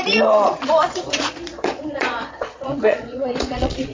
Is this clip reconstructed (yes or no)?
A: yes